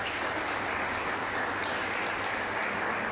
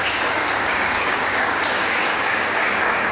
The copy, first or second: second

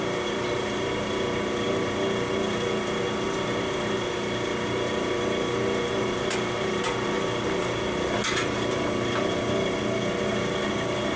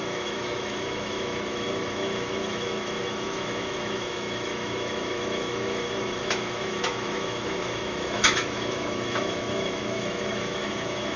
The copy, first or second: second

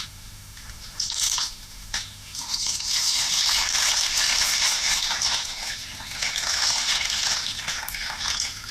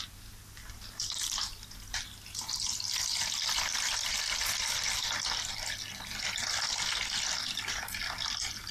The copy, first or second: first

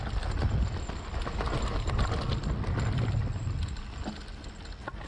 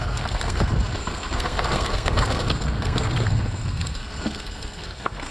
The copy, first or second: second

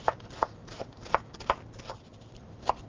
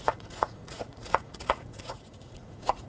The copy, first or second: second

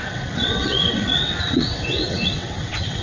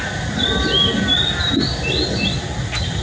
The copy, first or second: first